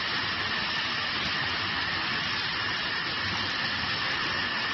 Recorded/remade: recorded